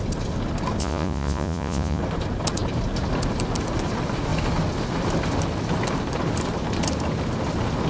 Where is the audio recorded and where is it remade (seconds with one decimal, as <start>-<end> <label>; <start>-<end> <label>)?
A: 0.0-0.8 recorded; 0.8-2.0 remade; 2.0-7.9 recorded

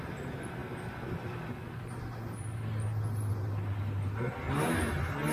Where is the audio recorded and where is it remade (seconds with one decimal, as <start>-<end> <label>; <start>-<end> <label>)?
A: 0.0-5.3 recorded

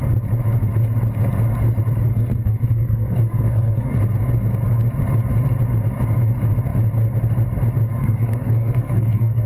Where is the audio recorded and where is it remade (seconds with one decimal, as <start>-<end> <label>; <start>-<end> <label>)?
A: 0.0-2.1 recorded; 2.1-4.0 remade; 4.0-8.0 recorded; 8.0-9.5 remade